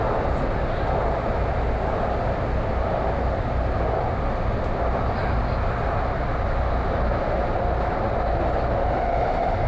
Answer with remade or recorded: recorded